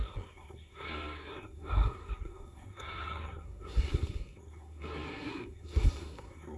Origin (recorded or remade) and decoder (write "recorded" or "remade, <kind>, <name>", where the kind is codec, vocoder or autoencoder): remade, codec, SNAC